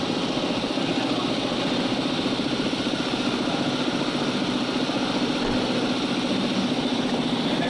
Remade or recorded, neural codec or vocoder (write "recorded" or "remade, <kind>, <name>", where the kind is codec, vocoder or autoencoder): recorded